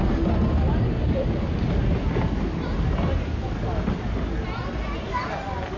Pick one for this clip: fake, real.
real